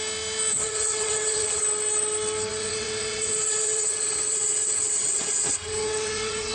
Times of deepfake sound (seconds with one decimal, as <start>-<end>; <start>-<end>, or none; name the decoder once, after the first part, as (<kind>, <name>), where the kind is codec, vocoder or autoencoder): 0.5-1.6 (vocoder, WaveNeXt); 2.5-6.5

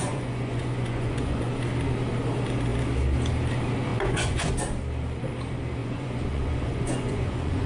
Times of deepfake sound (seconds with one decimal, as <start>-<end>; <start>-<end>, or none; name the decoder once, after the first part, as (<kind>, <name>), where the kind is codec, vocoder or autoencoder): 0.0-1.5 (vocoder, Vocos); 3.9-4.5; 5.8-7.7

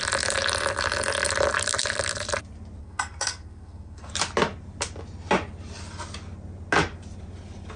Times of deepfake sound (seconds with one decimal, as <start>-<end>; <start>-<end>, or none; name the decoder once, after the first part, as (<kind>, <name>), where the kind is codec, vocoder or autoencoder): 2.8-4.1 (codec, SNAC)

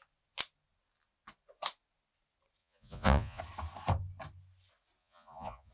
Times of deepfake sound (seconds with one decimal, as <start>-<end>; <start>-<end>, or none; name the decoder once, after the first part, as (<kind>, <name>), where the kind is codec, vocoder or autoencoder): 2.6-3.4 (vocoder, Vocos); 5.0-5.7